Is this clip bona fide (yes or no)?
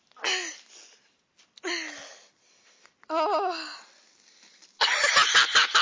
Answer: yes